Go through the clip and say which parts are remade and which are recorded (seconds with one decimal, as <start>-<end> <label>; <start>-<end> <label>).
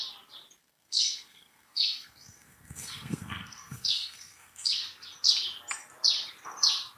0.0-0.6 recorded; 0.6-4.8 remade; 4.8-7.0 recorded